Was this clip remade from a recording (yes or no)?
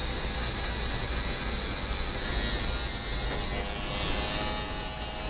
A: no